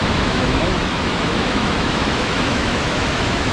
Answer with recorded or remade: remade